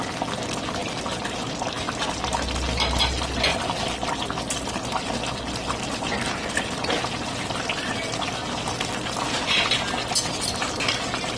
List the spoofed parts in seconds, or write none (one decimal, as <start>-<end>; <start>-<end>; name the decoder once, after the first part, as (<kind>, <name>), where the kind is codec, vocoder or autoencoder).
none